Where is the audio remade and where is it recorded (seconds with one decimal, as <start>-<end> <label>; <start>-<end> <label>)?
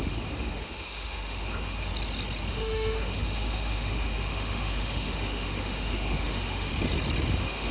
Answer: 0.0-1.9 remade; 1.9-2.5 recorded; 2.5-6.7 remade; 6.7-7.3 recorded; 7.3-7.7 remade